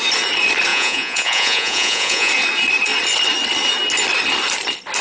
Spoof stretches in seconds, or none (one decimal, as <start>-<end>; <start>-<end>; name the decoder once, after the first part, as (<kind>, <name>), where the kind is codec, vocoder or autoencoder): 0.7-2.3 (vocoder, Vocos)